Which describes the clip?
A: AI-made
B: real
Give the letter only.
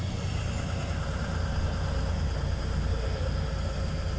B